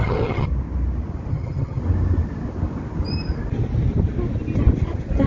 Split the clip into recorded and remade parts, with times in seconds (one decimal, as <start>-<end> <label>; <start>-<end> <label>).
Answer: 0.0-0.5 remade; 0.5-1.3 recorded; 1.3-1.8 remade; 1.8-5.3 recorded